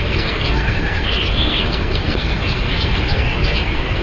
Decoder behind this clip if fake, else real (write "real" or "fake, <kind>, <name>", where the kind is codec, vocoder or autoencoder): fake, codec, SNAC